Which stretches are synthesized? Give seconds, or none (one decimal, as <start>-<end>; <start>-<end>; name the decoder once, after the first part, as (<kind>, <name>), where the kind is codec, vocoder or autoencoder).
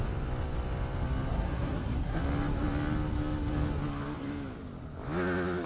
1.3-2.2 (codec, SNAC)